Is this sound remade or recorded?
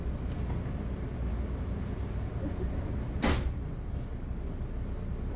recorded